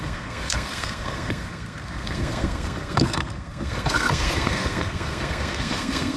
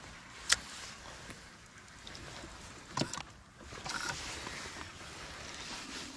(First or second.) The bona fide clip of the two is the second